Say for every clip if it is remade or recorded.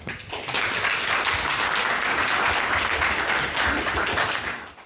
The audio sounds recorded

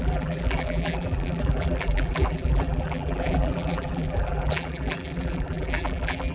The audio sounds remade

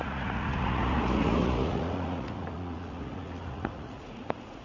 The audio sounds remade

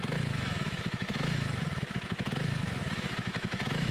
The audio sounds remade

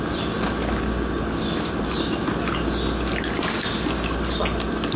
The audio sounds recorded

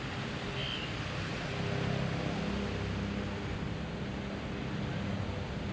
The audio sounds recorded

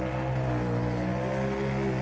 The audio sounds recorded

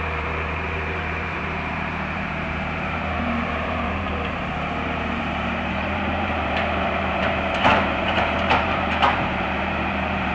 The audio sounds remade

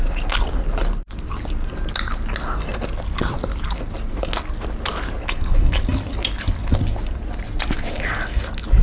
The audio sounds recorded